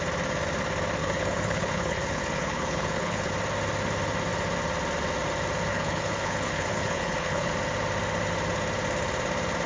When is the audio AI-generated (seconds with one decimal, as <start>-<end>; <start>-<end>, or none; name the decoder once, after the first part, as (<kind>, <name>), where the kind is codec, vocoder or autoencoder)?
1.0-3.3 (codec, HILCodec); 5.7-7.5